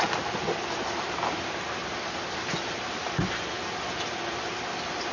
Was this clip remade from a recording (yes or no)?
no